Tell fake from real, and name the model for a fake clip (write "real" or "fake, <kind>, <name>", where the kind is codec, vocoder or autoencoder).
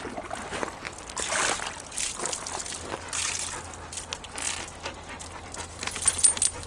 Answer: real